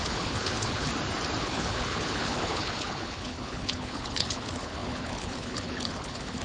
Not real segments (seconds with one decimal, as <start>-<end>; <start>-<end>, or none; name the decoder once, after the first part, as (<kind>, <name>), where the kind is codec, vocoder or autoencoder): 0.0-0.9 (codec, HILCodec); 1.4-6.4